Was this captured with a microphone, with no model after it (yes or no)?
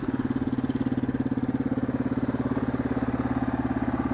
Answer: yes